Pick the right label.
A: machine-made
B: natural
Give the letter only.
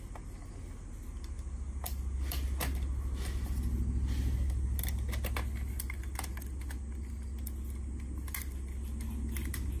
B